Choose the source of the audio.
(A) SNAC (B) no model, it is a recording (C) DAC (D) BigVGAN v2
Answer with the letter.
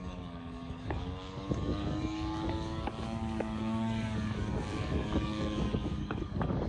C